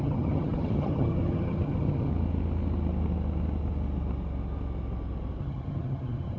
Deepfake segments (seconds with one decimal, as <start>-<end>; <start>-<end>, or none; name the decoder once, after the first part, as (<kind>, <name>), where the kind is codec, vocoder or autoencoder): 0.0-2.1 (vocoder, HiFi-GAN); 5.4-6.4